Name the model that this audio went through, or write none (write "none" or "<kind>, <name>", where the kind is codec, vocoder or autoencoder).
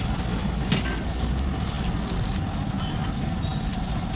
none